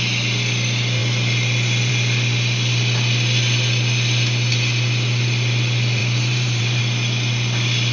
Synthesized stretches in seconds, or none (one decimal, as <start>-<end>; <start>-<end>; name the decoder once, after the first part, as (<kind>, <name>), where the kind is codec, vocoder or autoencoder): 6.0-6.8 (vocoder, BigVGAN v2)